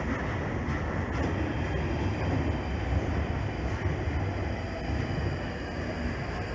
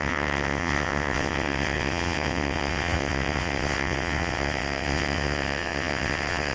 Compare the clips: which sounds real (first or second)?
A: first